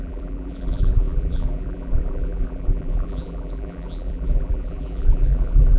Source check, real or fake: fake